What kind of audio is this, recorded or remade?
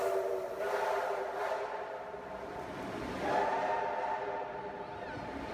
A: recorded